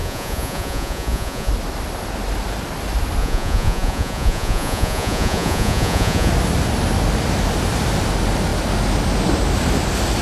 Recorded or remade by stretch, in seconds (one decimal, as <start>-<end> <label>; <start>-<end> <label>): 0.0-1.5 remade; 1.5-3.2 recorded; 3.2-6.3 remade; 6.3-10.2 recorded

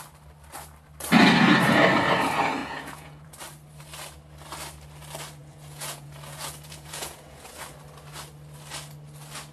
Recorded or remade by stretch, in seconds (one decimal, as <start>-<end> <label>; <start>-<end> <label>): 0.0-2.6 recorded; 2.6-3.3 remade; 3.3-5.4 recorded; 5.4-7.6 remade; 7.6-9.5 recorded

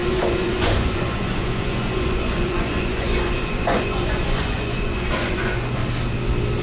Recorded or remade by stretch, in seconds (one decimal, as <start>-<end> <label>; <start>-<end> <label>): 0.0-5.8 remade; 5.8-6.6 recorded

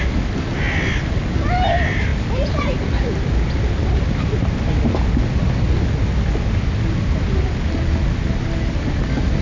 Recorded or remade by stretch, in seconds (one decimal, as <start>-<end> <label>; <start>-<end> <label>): 0.0-9.4 recorded